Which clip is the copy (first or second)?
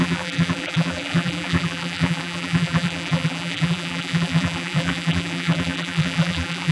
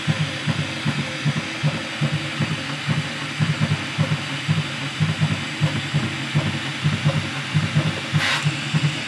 first